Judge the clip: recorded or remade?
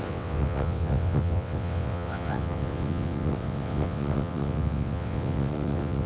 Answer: remade